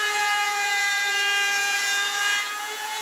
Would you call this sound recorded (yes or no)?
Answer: no